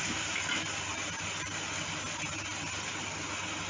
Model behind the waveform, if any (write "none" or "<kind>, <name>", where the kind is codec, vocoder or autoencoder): none